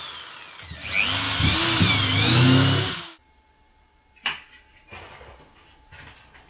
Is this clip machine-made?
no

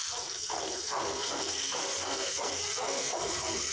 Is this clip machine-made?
yes